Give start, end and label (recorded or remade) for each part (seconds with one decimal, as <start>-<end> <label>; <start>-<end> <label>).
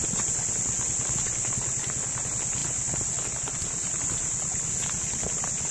0.0-5.7 recorded